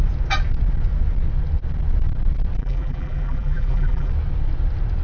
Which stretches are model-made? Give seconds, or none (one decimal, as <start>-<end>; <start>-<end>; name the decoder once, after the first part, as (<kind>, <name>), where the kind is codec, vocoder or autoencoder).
2.6-4.1 (vocoder, BigVGAN v2)